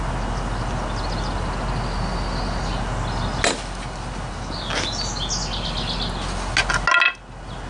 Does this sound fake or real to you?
real